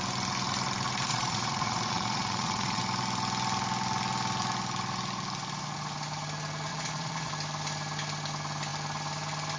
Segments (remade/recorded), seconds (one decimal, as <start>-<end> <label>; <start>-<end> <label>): 0.0-1.1 recorded; 1.1-2.8 remade; 2.8-6.7 recorded; 6.7-7.3 remade; 7.3-9.6 recorded